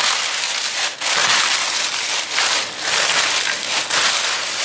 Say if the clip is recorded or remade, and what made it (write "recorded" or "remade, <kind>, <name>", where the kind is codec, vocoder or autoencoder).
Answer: recorded